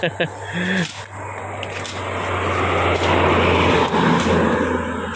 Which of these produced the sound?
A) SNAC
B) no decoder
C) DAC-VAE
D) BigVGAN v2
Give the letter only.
B